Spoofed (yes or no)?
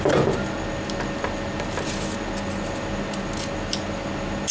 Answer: no